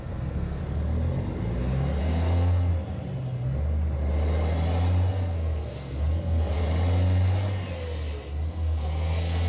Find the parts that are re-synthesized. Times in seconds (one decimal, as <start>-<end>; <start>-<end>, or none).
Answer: 0.0-0.6; 2.0-2.7; 5.1-6.6; 8.5-9.5